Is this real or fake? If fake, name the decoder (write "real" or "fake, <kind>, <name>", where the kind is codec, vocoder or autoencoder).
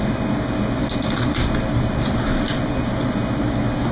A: real